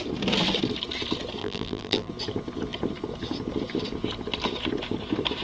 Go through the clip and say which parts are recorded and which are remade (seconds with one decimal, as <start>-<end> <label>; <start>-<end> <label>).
0.0-1.4 recorded; 1.4-2.1 remade; 2.1-5.4 recorded